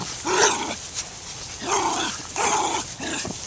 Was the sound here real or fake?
real